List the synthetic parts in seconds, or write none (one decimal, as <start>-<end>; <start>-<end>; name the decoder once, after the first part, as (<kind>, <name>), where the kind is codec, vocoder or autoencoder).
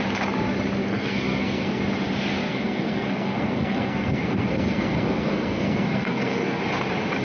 0.8-1.8 (codec, SNAC); 2.4-6.6